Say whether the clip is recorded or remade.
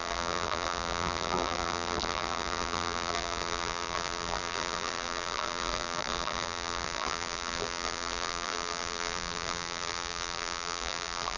remade